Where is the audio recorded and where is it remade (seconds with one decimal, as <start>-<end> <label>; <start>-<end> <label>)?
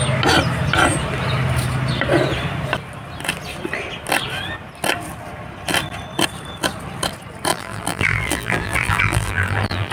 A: 0.0-7.5 recorded; 7.5-9.9 remade